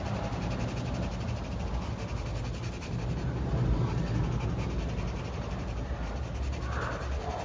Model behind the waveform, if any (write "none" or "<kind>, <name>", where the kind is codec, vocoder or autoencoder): none